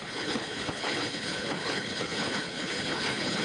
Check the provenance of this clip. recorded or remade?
remade